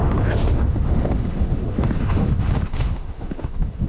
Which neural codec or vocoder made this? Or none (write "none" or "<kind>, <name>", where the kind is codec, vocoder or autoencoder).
autoencoder, DAC-VAE